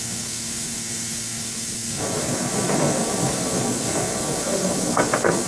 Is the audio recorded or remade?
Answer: remade